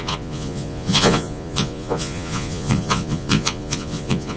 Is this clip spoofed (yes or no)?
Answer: yes